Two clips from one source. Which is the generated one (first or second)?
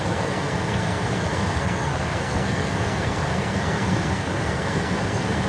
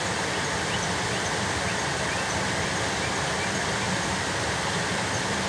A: first